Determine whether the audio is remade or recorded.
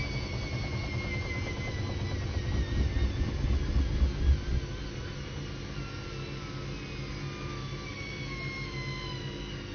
recorded